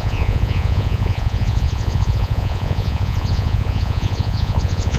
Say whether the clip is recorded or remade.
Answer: remade